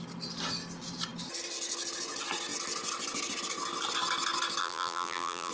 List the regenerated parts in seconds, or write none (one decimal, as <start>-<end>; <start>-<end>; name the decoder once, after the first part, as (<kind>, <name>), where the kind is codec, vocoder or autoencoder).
4.6-5.5 (vocoder, BigVGAN v2)